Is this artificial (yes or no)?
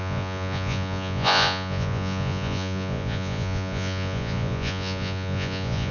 yes